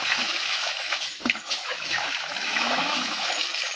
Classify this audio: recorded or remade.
remade